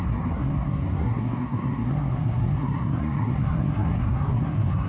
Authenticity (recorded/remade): remade